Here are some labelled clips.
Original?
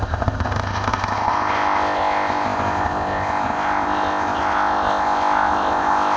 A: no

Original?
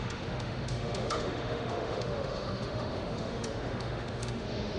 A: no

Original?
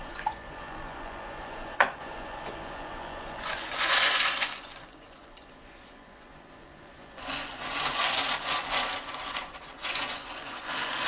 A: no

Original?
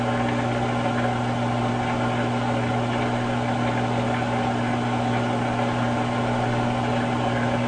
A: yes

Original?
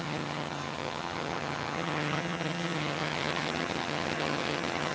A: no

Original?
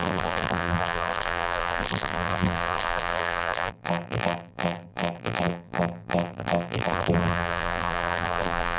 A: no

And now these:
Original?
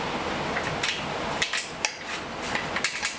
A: yes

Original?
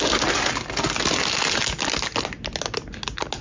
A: yes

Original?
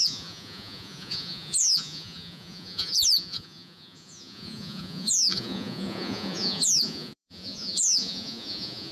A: no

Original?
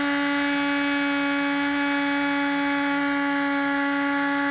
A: yes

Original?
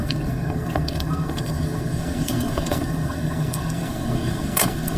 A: no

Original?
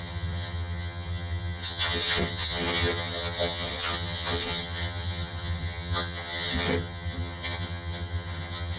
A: no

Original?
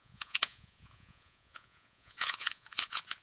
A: no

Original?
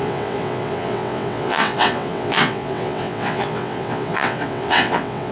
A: no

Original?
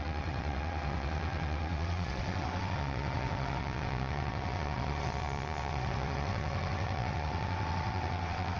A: no